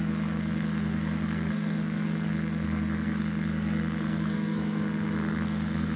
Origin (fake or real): fake